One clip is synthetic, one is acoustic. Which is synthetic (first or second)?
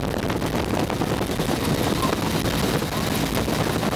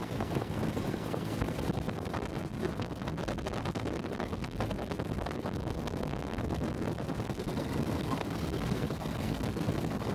second